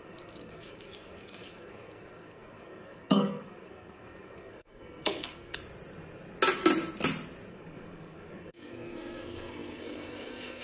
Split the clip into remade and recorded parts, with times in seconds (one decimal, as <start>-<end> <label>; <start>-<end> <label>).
0.0-5.6 remade; 5.6-7.5 recorded; 7.5-10.6 remade